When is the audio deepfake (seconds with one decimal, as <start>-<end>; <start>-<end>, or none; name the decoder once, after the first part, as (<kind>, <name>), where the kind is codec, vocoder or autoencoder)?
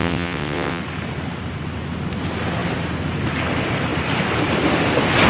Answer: 0.0-0.8 (vocoder, WaveNeXt)